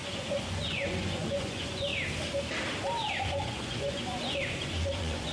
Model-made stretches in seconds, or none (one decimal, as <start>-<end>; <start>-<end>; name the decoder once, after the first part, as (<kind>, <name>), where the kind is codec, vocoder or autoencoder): 0.0-1.9 (vocoder, Vocos); 3.1-5.3